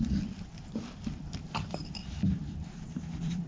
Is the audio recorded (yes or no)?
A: no